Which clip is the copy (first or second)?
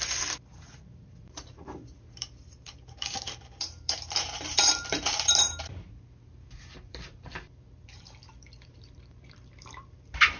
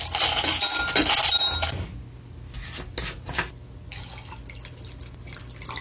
first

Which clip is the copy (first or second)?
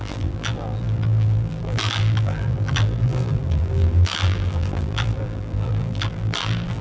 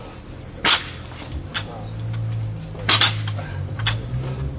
first